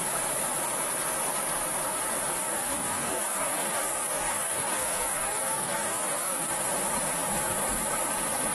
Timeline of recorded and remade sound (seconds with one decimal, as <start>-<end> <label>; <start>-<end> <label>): 0.0-2.4 recorded; 2.4-6.5 remade; 6.5-8.5 recorded